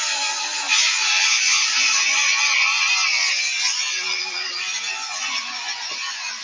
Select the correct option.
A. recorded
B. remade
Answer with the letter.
B